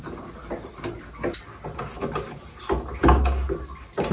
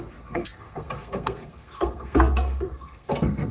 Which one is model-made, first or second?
second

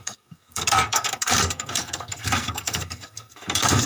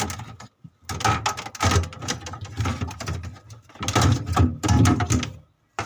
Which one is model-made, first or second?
first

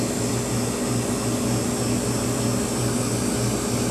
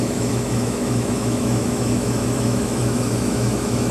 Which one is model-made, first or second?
second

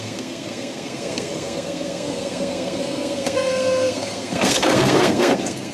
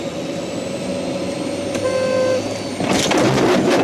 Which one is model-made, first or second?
first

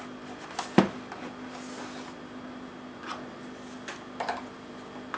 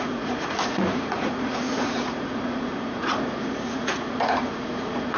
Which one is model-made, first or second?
second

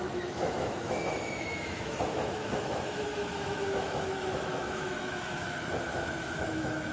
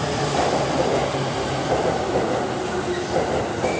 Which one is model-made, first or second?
first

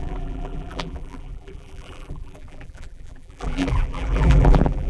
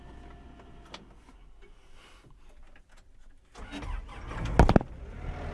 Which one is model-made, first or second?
first